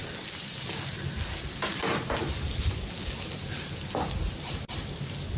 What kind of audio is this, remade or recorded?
recorded